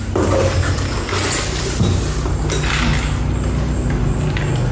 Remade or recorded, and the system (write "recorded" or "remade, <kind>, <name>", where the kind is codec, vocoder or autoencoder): recorded